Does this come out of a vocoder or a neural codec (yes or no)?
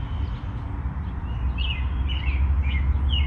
no